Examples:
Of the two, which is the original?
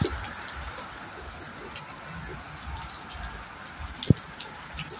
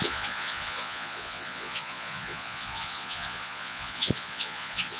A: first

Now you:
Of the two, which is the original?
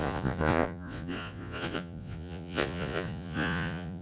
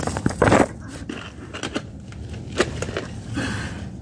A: second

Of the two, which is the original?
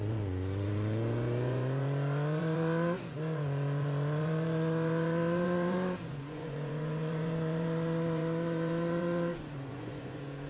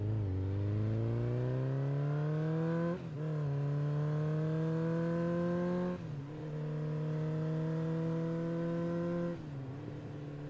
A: second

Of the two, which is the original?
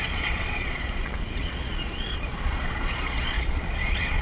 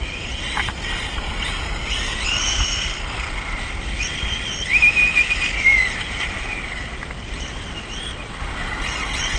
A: second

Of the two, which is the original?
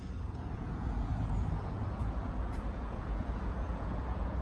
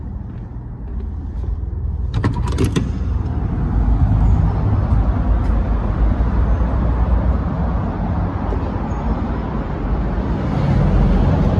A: second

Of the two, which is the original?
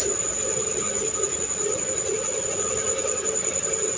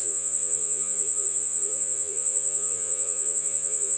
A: first